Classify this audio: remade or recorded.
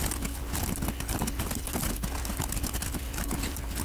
recorded